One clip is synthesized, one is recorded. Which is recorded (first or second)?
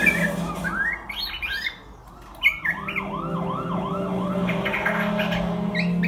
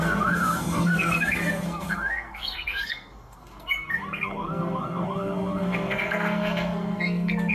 first